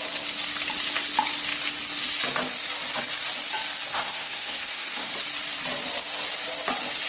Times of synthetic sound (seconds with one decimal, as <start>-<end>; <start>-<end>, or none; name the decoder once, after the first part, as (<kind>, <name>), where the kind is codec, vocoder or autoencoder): 3.9-5.1 (codec, SNAC)

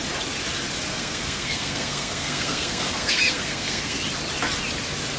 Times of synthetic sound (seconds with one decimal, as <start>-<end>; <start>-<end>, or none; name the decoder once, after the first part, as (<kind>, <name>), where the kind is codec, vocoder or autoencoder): 0.9-4.0 (codec, SNAC)

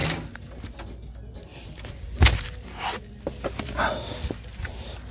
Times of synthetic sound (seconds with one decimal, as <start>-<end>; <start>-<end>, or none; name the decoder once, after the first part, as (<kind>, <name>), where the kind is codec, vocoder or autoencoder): none

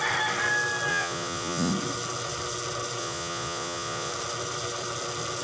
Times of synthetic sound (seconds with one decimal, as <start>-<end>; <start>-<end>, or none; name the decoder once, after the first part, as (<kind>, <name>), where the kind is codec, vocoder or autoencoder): 0.9-1.7 (vocoder, Vocos); 3.0-4.1